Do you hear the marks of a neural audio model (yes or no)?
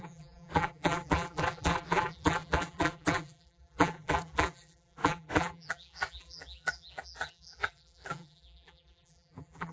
yes